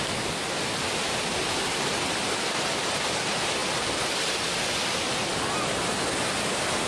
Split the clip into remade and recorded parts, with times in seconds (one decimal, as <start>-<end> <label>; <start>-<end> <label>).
0.0-6.9 recorded